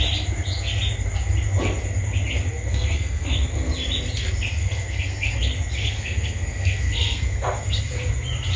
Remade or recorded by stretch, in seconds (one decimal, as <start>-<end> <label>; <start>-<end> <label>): 0.0-2.7 recorded; 2.7-3.7 remade; 3.7-4.6 recorded; 4.6-5.3 remade; 5.3-5.8 recorded; 5.8-7.8 remade; 7.8-8.6 recorded